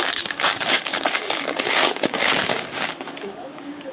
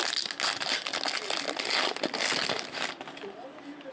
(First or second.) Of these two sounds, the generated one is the first